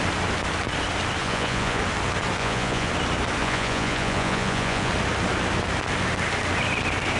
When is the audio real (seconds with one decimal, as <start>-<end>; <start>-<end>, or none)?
0.0-1.2; 1.8-2.4; 2.9-3.4; 4.9-7.2